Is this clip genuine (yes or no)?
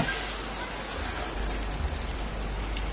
yes